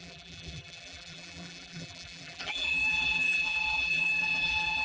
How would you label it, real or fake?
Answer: fake